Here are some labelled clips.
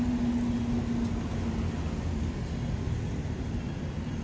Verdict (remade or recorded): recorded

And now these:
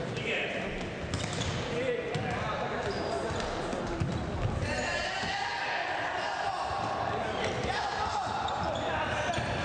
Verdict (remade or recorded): recorded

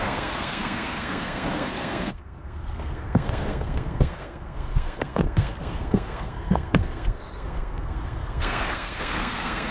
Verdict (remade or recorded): remade